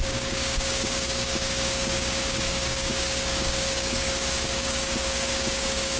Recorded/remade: remade